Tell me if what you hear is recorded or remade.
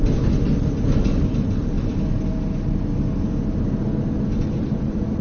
recorded